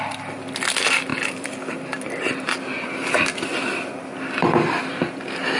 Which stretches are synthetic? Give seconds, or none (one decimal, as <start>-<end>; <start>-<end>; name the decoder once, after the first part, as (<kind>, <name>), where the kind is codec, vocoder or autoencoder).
none